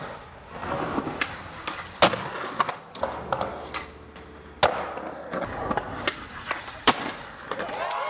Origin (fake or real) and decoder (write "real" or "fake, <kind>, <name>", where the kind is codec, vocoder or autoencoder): real